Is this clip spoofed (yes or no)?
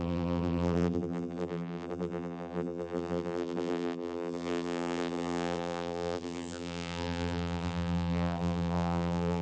yes